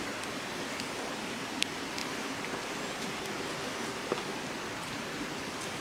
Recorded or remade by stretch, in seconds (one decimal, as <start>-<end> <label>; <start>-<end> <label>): 0.0-5.8 recorded